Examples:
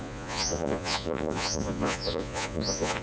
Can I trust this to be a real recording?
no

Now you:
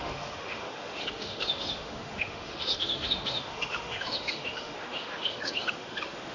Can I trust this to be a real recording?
no